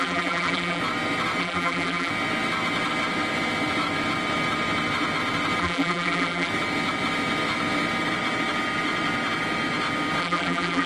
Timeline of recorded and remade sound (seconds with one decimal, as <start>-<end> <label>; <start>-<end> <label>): 0.0-0.8 remade; 0.8-1.4 recorded; 1.4-2.1 remade; 2.1-5.6 recorded; 5.6-6.5 remade; 6.5-10.2 recorded; 10.2-10.9 remade